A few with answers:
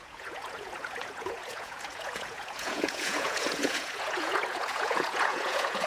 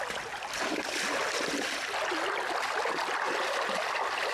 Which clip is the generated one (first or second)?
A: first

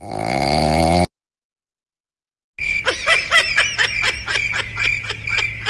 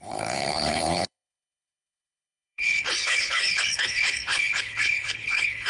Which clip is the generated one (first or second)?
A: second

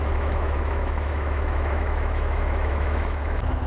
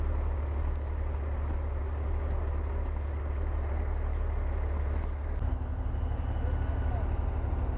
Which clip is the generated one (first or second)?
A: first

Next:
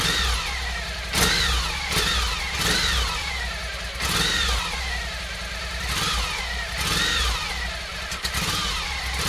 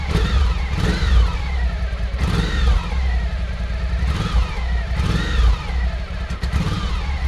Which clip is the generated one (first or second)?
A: second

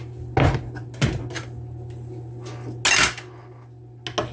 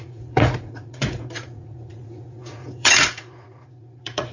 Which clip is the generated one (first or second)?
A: second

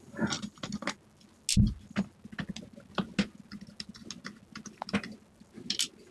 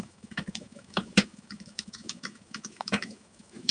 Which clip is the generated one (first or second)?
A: second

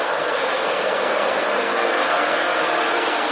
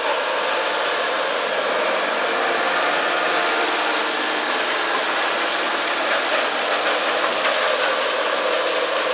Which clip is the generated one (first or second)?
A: first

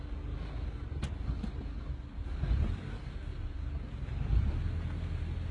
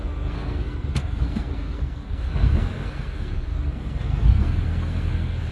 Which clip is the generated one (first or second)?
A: second